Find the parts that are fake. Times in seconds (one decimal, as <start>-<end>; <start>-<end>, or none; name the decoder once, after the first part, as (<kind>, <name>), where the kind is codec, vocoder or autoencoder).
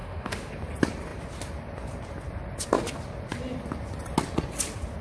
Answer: 0.0-0.5 (autoencoder, DAC-VAE)